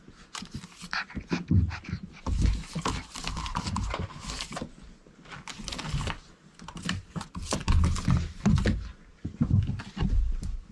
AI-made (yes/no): no